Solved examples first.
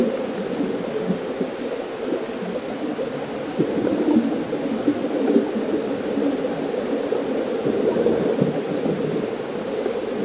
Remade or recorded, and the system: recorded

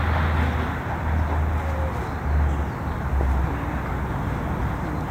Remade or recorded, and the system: recorded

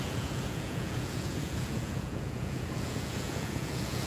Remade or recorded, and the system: remade, vocoder, Vocos